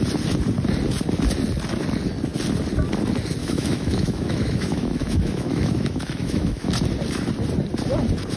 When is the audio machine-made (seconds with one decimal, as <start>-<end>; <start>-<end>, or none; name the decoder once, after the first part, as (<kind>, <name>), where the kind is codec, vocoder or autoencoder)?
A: 3.4-6.7 (autoencoder, DAC-VAE)

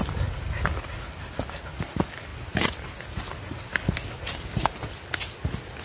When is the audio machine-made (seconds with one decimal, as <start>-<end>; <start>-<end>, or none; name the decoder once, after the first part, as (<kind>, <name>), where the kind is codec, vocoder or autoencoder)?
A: none

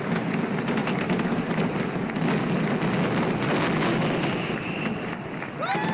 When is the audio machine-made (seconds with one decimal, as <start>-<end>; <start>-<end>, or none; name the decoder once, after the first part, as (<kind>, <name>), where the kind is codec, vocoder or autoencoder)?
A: none